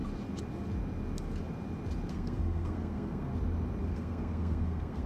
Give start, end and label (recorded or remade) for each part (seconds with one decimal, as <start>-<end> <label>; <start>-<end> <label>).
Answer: 0.0-2.1 recorded; 2.1-3.3 remade; 3.3-3.8 recorded; 3.8-5.1 remade